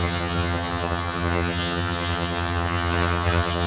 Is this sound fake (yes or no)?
yes